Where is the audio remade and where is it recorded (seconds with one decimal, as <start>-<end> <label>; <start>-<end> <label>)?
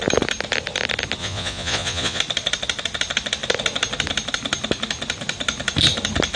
0.0-1.2 recorded; 1.2-2.2 remade; 2.2-6.4 recorded